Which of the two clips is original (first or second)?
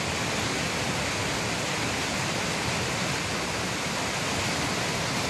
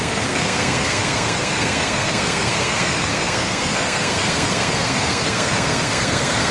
first